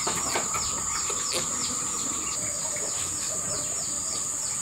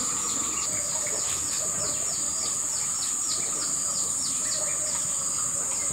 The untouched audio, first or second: second